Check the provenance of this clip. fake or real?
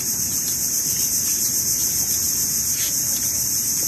real